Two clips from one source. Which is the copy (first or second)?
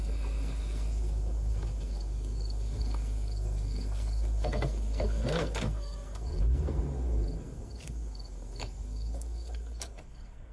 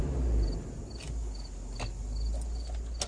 first